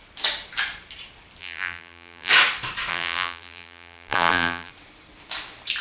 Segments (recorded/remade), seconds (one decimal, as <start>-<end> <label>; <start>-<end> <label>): 0.0-1.4 recorded; 1.4-2.3 remade; 2.3-2.9 recorded; 2.9-4.7 remade; 4.7-5.8 recorded

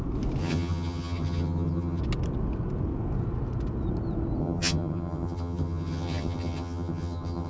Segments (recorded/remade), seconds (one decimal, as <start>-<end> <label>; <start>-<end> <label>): 0.0-0.4 recorded; 0.4-2.0 remade; 2.0-4.4 recorded; 4.4-7.5 remade

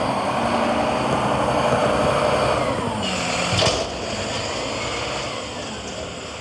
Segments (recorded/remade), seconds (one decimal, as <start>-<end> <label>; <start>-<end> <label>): 0.0-6.4 recorded

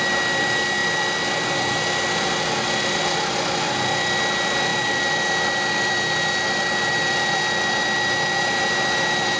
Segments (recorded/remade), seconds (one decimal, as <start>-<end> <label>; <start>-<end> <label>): 0.0-9.4 recorded

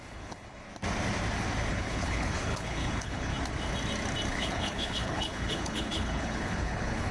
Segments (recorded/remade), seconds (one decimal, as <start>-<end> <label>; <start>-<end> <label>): 0.0-0.7 remade; 0.7-1.7 recorded; 1.7-3.3 remade; 3.3-4.3 recorded; 4.3-7.1 remade

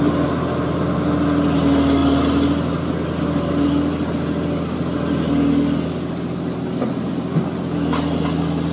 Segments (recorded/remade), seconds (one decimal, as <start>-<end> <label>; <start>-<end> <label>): 0.0-8.7 recorded

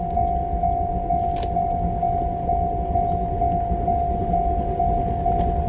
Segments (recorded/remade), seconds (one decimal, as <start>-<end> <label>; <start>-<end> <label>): 0.0-5.7 recorded

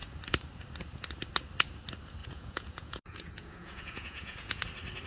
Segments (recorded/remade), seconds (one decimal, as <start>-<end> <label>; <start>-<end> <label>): 0.0-2.2 recorded; 2.2-4.6 remade; 4.6-5.1 recorded